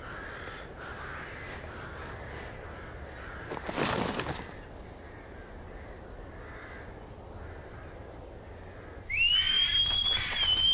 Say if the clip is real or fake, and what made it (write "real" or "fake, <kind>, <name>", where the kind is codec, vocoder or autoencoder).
real